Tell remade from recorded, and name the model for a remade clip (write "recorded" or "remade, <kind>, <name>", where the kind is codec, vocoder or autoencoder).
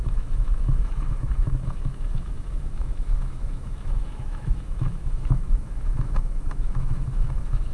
remade, autoencoder, DAC-VAE